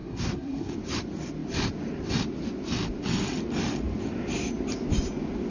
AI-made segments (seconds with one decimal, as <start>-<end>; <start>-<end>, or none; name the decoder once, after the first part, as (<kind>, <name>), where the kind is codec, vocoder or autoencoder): 0.0-0.7 (codec, SNAC)